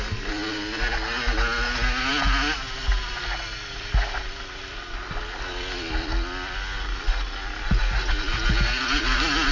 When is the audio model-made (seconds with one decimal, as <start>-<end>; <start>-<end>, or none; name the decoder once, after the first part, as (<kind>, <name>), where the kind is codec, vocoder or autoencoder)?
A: none